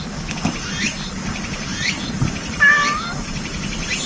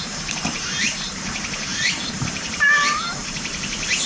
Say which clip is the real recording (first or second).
first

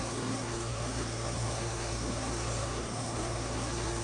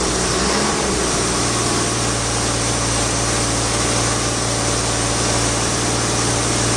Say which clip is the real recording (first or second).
second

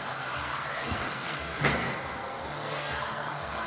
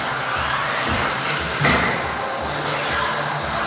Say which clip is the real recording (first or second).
second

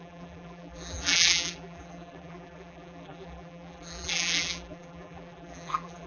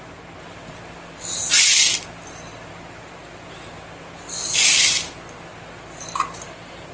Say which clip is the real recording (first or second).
second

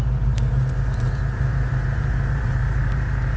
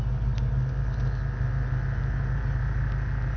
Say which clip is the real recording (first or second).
second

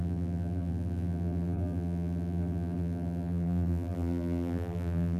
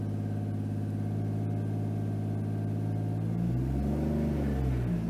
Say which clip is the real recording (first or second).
second